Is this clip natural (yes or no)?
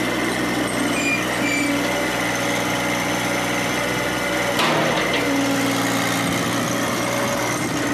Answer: yes